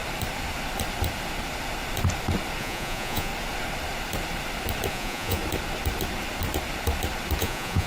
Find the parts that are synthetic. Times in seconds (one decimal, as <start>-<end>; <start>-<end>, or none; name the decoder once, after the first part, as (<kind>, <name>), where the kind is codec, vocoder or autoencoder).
2.6-3.3 (vocoder, Vocos); 4.9-5.4; 7.4-7.9